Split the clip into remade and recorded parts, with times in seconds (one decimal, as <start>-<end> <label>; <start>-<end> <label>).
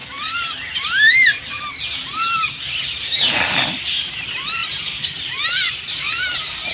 0.0-6.7 remade